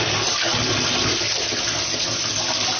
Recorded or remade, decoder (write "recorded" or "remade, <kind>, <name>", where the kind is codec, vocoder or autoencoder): recorded